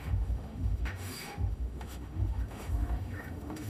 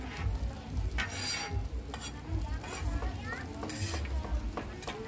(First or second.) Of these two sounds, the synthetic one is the first